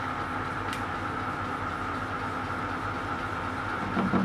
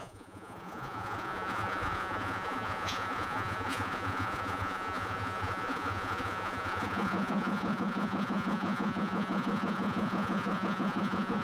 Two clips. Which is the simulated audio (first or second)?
second